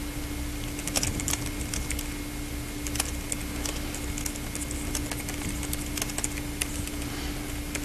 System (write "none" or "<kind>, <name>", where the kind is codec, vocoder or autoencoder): none